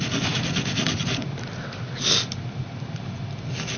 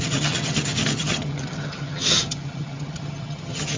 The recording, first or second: first